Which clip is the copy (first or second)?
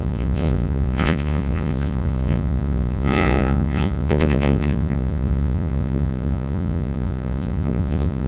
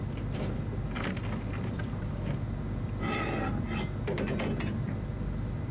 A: first